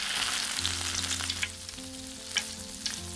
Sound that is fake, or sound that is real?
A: real